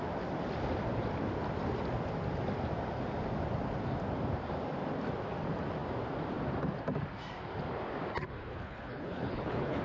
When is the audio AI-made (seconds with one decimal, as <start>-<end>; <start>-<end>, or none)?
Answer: 8.5-9.8